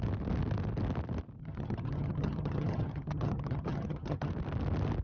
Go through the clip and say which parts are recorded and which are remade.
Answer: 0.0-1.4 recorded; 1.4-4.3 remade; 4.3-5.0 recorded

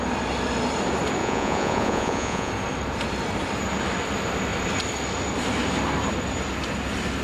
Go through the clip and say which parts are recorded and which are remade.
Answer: 0.0-1.2 recorded; 1.2-2.5 remade; 2.5-7.2 recorded

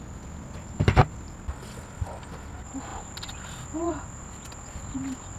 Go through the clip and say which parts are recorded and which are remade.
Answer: 0.0-5.4 recorded

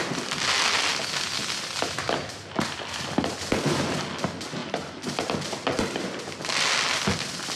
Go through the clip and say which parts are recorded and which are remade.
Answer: 0.0-7.6 recorded